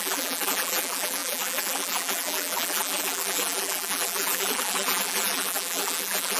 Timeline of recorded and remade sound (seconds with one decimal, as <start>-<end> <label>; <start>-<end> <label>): 0.0-6.4 remade